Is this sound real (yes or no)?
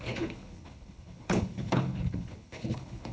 no